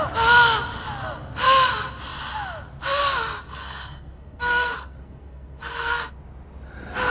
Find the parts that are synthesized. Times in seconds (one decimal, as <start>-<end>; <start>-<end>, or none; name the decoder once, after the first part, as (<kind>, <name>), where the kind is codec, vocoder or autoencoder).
3.5-6.2 (codec, SNAC)